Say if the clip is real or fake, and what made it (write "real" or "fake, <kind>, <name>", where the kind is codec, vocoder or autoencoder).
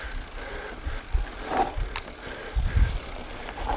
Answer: real